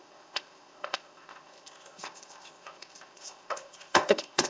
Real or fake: fake